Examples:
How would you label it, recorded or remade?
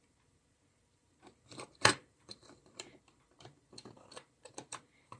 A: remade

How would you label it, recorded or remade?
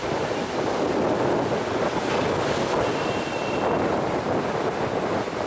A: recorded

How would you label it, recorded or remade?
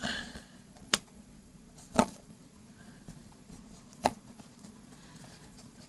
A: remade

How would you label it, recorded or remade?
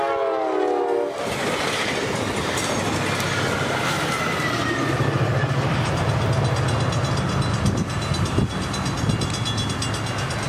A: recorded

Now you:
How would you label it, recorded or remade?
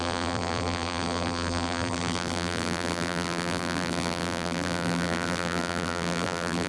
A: remade